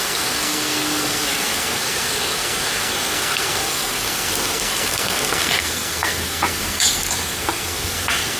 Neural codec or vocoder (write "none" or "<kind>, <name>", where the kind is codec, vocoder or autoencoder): codec, SNAC